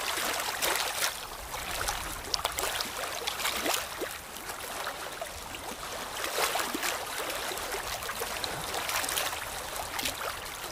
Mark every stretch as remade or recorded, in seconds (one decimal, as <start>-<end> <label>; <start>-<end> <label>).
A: 0.0-10.7 recorded